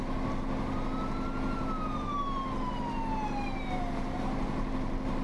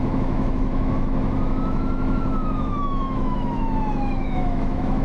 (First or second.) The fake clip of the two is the second